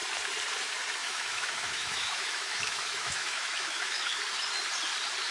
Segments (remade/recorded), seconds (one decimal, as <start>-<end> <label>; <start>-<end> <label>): 0.0-1.0 recorded; 1.0-4.2 remade; 4.2-5.3 recorded